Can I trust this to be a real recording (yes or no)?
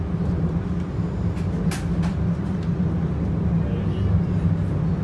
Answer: yes